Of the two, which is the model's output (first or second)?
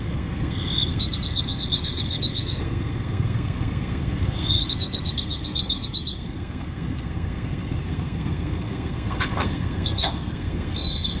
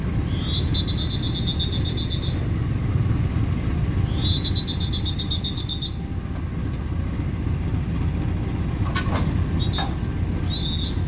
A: first